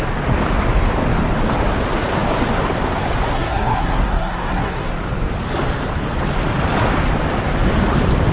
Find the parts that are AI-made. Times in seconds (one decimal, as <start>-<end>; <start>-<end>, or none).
3.3-4.9